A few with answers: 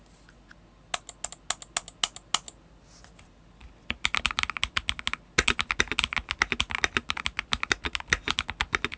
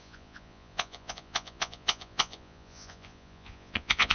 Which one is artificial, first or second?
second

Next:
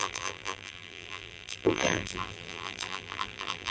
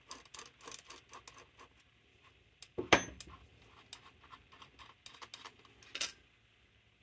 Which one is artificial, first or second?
first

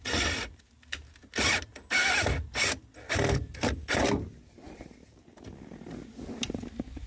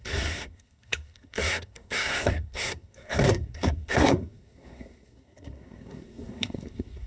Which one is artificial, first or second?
second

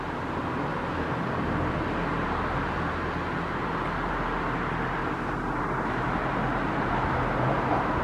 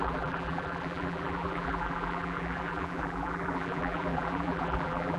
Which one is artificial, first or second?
second